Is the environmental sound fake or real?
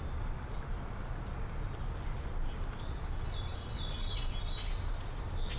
real